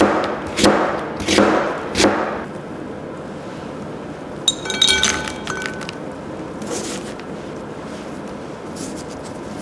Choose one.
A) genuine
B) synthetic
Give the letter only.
A